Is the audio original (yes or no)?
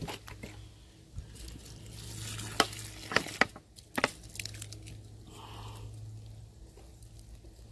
yes